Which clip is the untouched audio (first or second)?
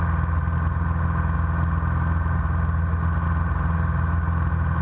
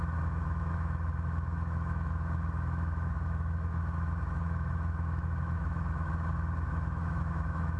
first